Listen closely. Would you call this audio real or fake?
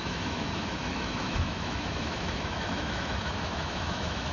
fake